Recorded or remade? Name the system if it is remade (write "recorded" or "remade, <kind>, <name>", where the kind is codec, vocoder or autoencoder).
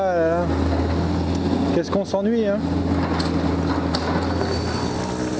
recorded